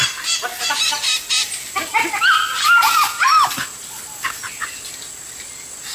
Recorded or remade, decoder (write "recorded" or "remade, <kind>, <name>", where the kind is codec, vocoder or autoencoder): recorded